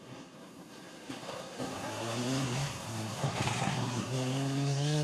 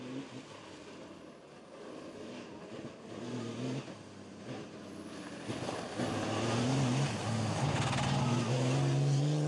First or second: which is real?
second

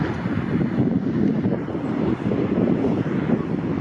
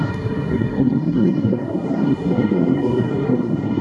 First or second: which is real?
first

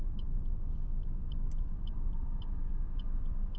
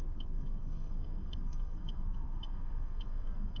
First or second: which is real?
first